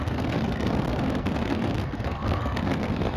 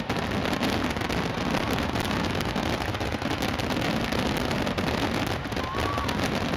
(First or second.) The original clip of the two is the second